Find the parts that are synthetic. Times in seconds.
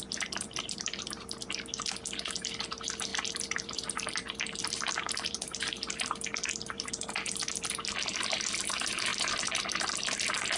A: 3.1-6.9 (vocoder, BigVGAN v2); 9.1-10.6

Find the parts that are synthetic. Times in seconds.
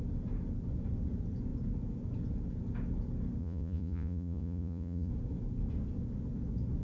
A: 3.4-5.1 (vocoder, Vocos)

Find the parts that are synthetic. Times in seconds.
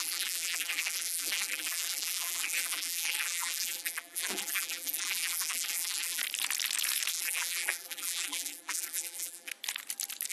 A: 0.0-6.2 (vocoder, BigVGAN v2); 7.1-9.5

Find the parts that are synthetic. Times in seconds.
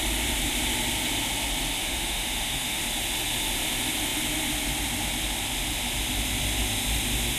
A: 1.8-2.8 (autoencoder, DAC-VAE)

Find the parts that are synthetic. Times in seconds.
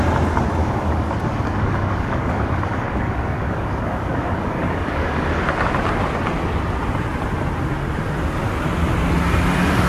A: 0.6-5.4 (codec, DAC)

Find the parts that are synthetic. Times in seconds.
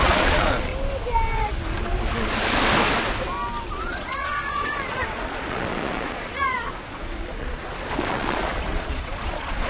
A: 0.0-0.7 (vocoder, Vocos); 3.8-9.7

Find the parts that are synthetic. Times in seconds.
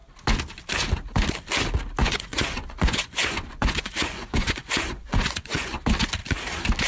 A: 2.0-5.8 (vocoder, Vocos)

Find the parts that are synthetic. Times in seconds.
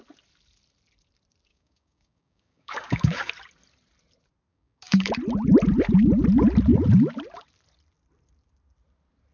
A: 1.5-3.3 (codec, DAC); 4.5-5.1